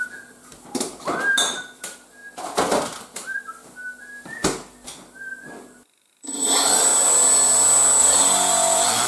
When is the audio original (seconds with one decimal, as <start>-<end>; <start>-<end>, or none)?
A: 0.5-1.5; 2.2-4.0; 4.4-6.1; 6.9-8.0